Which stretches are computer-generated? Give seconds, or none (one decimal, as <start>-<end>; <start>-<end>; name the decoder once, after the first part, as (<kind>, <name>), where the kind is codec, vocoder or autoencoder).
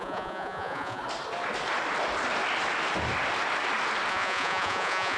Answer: 0.0-1.0 (vocoder, Vocos); 4.1-5.2